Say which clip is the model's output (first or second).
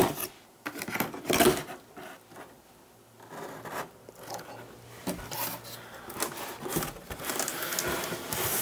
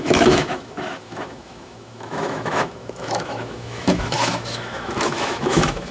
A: second